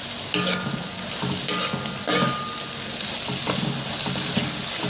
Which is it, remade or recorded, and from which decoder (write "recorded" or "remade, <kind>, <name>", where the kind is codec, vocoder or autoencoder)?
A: recorded